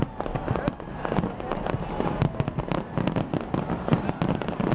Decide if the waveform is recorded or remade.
recorded